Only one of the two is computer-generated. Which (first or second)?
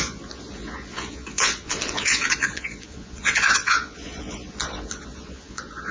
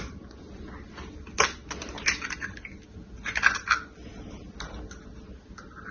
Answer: first